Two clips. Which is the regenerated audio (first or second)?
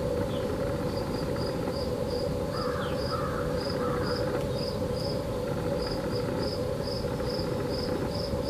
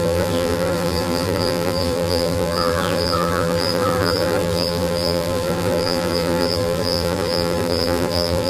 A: second